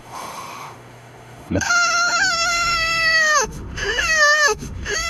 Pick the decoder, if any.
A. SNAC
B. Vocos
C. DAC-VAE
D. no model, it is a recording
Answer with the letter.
C